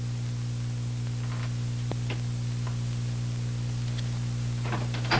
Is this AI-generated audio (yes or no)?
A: no